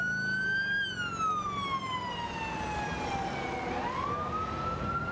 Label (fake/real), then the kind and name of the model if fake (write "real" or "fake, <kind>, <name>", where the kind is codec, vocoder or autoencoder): real